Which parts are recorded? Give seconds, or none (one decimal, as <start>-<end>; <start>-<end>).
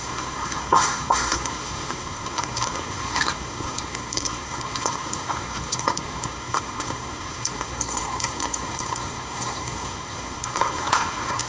none